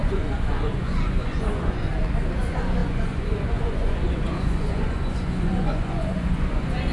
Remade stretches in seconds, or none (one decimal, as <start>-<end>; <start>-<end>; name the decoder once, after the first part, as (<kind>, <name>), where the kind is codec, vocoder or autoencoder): 0.0-1.9 (vocoder, Vocos); 2.4-6.9

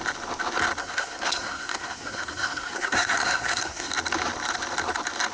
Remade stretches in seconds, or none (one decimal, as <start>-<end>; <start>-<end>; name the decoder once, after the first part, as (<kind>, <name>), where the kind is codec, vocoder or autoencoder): 0.8-3.9 (codec, SNAC)

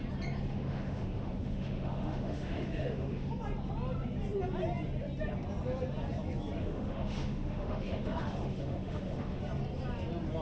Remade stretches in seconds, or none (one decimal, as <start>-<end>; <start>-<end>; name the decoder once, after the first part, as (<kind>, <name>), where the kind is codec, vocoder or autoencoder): 0.5-3.3 (autoencoder, DAC-VAE); 6.6-9.4

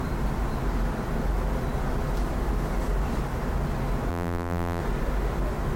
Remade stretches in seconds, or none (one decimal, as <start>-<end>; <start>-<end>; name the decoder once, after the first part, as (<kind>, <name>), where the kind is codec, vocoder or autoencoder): 4.1-4.8 (vocoder, BigVGAN v2)

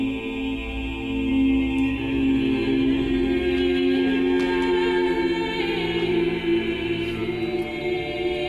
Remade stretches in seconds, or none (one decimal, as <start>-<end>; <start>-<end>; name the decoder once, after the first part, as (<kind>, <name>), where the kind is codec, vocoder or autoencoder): none

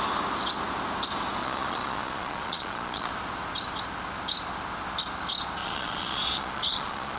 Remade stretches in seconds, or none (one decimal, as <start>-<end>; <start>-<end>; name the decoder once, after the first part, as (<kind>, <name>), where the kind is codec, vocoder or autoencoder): 1.4-3.1 (vocoder, Vocos); 5.6-7.2

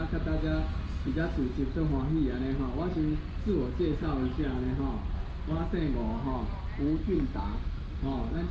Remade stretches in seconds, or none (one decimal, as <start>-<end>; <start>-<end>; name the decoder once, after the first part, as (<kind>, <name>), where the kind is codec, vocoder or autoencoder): none